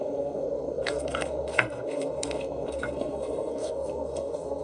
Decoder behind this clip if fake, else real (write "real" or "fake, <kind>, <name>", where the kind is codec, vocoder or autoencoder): fake, codec, SNAC